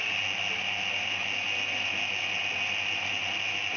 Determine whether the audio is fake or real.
real